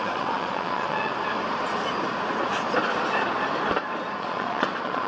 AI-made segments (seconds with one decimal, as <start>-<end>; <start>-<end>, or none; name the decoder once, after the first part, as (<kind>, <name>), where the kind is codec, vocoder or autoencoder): 0.0-1.1 (vocoder, Vocos); 4.2-5.1